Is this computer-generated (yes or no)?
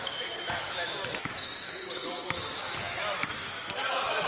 yes